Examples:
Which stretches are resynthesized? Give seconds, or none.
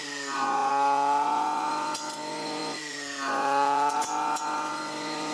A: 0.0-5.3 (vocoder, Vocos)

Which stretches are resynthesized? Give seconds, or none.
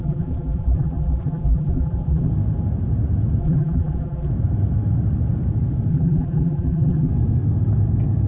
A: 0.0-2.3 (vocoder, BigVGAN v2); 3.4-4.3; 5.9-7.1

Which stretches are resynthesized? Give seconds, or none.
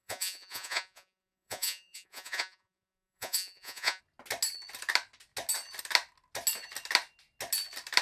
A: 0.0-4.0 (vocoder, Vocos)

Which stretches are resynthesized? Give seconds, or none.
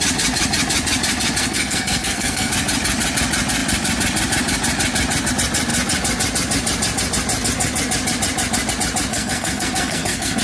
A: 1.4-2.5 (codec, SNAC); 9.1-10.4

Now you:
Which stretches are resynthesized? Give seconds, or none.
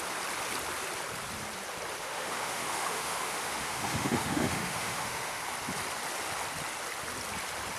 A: 2.0-5.4 (autoencoder, DAC-VAE)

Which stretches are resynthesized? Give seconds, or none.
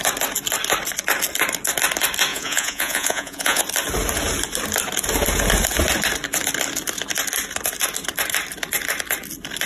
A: 2.3-3.6 (vocoder, Vocos)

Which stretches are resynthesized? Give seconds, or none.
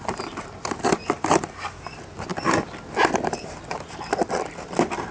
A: none